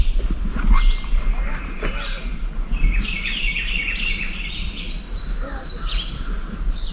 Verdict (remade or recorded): recorded